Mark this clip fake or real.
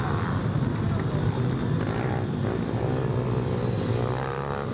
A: real